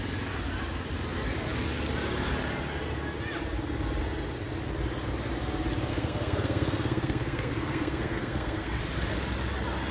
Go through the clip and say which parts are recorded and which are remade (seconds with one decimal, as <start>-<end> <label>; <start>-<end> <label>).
0.0-5.9 recorded; 5.9-8.8 remade; 8.8-9.9 recorded